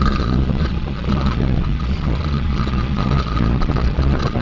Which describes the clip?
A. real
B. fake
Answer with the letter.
B